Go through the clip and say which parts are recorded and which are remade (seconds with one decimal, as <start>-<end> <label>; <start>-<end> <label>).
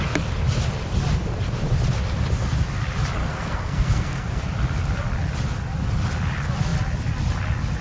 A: 0.0-3.2 recorded; 3.2-4.4 remade; 4.4-7.8 recorded